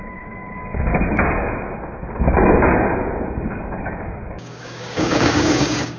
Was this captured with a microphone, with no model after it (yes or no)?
no